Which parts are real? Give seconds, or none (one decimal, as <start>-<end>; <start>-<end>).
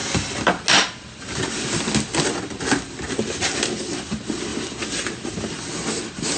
0.0-6.4